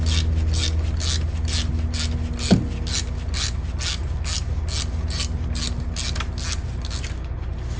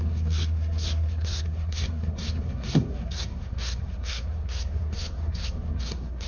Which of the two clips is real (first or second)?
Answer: first